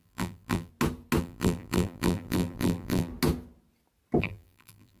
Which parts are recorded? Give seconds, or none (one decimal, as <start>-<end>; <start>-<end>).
0.7-1.2; 3.1-4.2